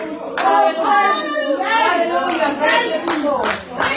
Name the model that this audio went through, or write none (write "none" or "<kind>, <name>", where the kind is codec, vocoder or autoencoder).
none